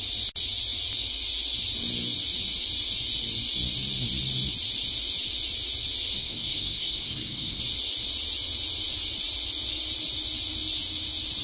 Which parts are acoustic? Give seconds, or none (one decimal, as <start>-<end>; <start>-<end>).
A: 0.0-6.2; 7.6-11.4